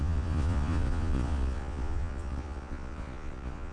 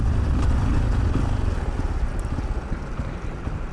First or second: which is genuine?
second